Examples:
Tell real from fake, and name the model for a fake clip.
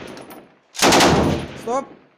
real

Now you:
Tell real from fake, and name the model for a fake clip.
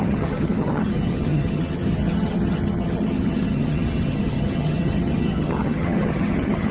fake, vocoder, HiFi-GAN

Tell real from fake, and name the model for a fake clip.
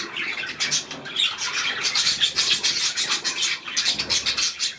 real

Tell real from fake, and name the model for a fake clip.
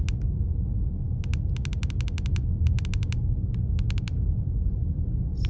real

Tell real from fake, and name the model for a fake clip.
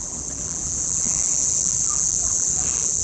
fake, vocoder, BigVGAN v2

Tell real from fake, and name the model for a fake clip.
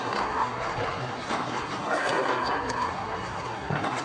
fake, codec, SNAC